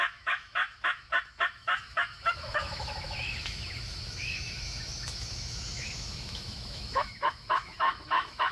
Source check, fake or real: fake